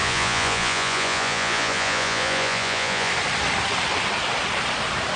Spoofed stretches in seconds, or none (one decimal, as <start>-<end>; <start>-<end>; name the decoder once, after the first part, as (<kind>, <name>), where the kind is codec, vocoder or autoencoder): 0.0-3.1 (vocoder, Vocos)